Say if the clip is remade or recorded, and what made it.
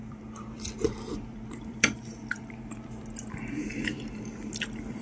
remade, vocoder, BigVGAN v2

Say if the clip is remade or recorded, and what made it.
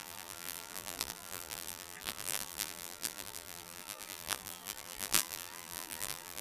remade, vocoder, BigVGAN v2